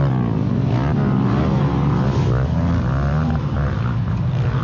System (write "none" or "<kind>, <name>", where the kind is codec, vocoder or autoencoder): none